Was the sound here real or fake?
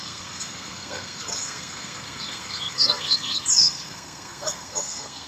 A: fake